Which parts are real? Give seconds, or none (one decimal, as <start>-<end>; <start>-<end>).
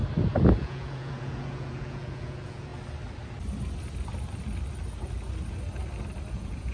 0.0-0.6; 2.7-6.3